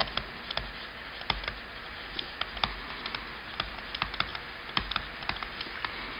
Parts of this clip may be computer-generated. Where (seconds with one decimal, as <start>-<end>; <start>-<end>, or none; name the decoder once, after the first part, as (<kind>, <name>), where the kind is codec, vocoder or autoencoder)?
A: none